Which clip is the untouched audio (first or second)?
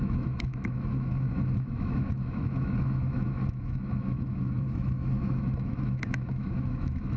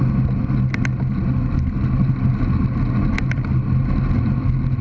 second